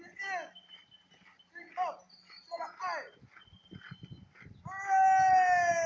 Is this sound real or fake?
real